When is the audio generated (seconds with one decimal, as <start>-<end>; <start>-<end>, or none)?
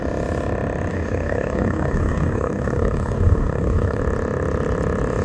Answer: 0.9-4.0